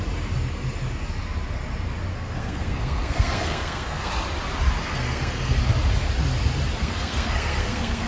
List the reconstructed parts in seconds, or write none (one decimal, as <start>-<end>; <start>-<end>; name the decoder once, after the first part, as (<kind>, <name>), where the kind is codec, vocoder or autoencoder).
2.1-4.1 (codec, SNAC); 4.9-5.6; 6.8-8.1